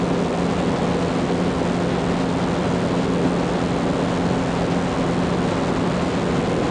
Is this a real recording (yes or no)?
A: yes